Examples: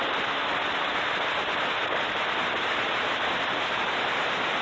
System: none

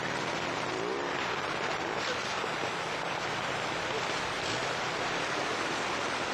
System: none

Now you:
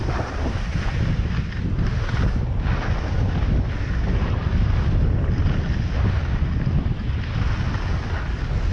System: none